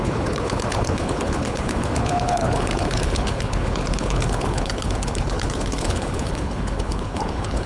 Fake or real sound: fake